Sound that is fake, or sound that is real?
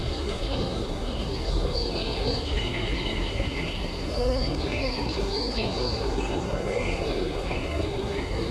fake